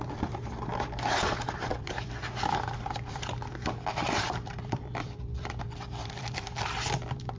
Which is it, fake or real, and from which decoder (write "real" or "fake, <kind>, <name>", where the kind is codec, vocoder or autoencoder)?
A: fake, vocoder, BigVGAN v2